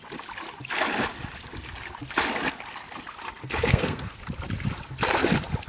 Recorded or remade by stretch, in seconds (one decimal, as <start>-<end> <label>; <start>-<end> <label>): 0.0-3.7 recorded; 3.7-4.2 remade; 4.2-5.7 recorded